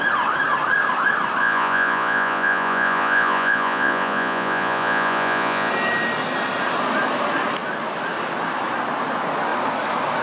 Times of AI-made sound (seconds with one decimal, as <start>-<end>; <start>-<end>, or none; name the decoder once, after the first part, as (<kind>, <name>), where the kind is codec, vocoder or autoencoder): 1.4-5.7 (vocoder, Vocos)